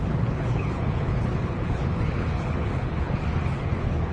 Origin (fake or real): fake